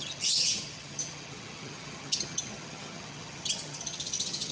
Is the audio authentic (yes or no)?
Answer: no